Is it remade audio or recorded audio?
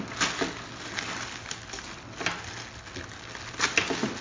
recorded